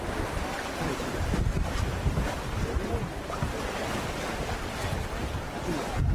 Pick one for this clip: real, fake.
real